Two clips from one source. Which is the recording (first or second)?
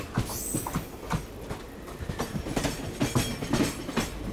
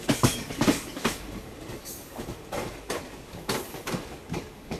first